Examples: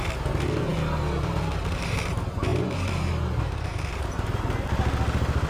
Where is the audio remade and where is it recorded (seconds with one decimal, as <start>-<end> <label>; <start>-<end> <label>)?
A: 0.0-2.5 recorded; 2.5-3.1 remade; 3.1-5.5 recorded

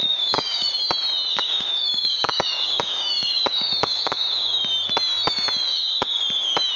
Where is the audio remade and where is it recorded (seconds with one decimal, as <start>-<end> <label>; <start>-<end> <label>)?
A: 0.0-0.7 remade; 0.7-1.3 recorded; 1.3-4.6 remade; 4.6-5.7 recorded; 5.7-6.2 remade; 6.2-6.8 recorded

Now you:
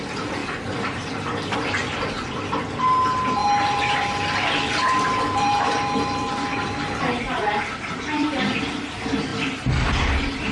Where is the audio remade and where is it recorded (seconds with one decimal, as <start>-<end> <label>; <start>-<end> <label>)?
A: 0.0-0.4 recorded; 0.4-1.1 remade; 1.1-3.4 recorded; 3.4-8.6 remade; 8.6-10.5 recorded